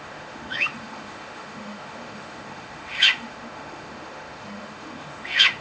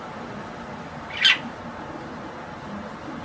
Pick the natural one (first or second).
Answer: second